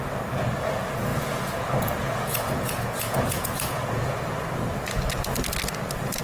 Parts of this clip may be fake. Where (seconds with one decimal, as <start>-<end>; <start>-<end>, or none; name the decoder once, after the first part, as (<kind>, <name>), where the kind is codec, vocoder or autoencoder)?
1.1-4.2 (vocoder, Vocos)